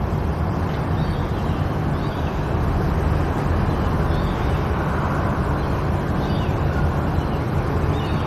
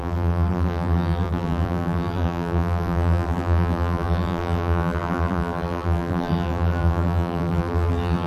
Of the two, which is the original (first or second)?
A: first